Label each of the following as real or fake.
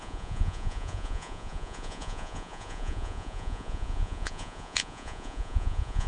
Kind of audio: fake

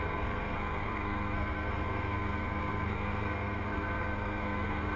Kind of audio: fake